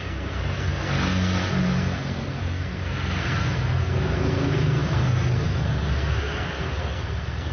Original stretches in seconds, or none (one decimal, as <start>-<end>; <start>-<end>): none